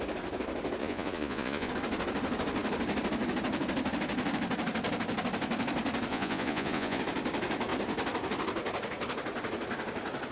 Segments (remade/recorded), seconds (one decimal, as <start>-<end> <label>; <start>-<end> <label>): 0.0-0.8 recorded; 0.8-1.7 remade; 1.7-6.1 recorded; 6.1-7.0 remade; 7.0-10.3 recorded